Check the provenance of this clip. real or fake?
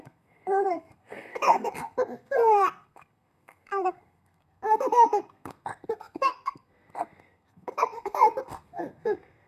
fake